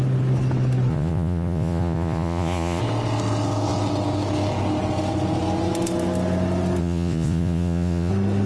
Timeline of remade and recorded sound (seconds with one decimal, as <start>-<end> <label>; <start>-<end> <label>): 0.0-0.9 recorded; 0.9-2.8 remade; 2.8-6.8 recorded; 6.8-8.1 remade; 8.1-8.5 recorded